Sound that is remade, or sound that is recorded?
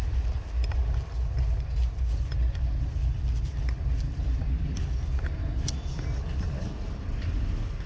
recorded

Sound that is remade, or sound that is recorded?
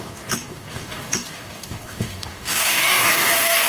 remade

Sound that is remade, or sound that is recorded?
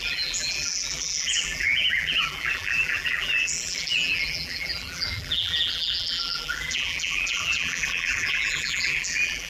remade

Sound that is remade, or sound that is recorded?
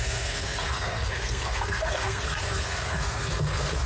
remade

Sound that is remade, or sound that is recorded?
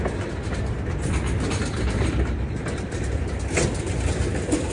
recorded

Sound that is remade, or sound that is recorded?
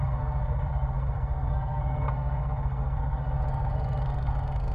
remade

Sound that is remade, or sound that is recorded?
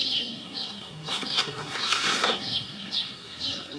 remade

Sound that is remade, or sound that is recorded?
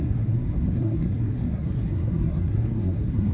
remade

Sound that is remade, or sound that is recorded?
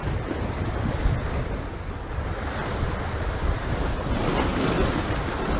recorded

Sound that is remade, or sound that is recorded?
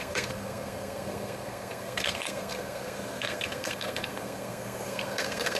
remade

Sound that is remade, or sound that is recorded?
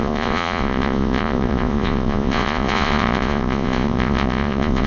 remade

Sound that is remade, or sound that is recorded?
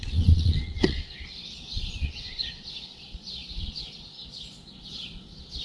remade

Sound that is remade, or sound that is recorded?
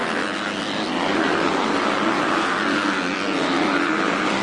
recorded